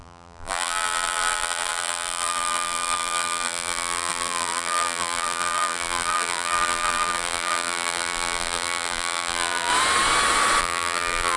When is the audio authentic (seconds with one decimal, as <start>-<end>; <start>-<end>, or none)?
9.7-10.6